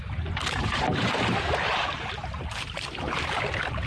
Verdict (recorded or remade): remade